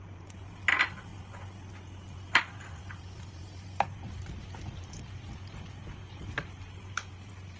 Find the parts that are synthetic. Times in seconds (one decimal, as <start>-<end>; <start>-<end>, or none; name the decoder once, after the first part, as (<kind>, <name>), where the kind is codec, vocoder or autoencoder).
none